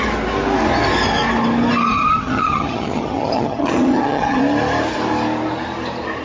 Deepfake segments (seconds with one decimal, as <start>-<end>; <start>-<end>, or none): 1.9-4.4